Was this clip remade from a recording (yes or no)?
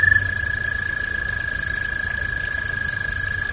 no